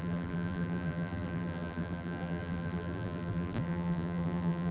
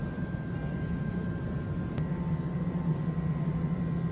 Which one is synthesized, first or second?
first